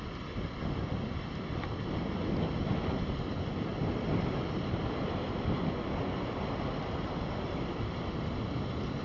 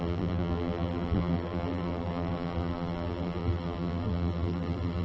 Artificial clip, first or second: second